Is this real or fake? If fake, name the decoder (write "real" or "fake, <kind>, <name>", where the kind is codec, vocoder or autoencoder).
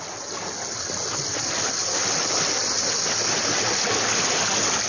real